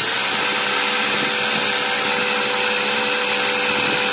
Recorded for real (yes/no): yes